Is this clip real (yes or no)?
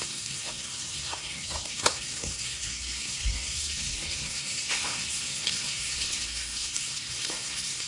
no